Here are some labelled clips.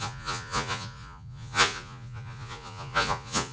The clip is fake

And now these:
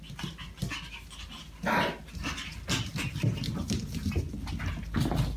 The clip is real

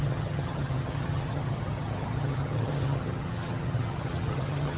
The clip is fake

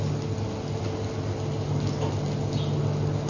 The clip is real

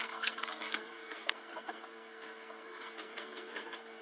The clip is fake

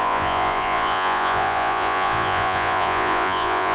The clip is fake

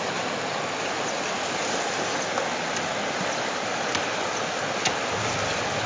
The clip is real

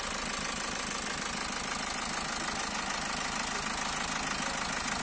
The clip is real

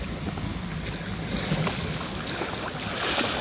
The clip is real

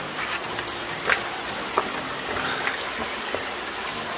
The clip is real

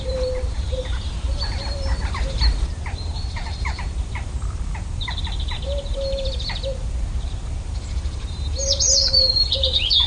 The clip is fake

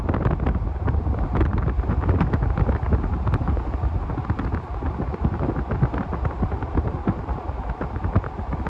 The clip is real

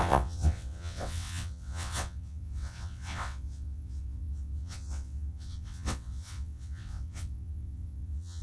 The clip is fake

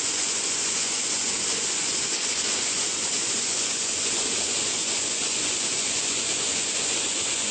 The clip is fake